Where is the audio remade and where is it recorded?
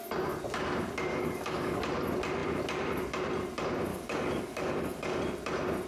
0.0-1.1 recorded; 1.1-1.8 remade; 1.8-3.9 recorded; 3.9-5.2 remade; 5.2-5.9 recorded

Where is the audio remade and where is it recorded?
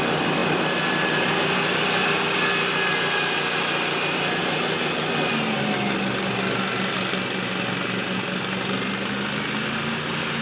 0.0-10.4 recorded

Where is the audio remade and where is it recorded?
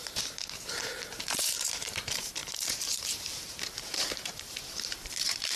0.0-5.6 remade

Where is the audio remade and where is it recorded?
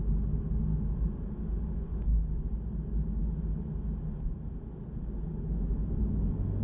0.0-0.7 recorded; 0.7-1.2 remade; 1.2-6.6 recorded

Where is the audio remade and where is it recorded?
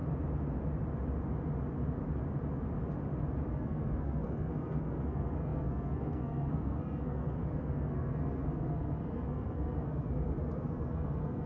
0.0-3.5 recorded; 3.5-11.5 remade